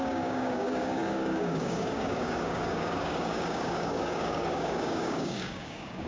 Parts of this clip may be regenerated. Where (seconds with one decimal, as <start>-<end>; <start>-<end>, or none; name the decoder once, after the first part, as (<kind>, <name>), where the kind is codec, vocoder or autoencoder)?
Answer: 0.0-6.1 (codec, DAC)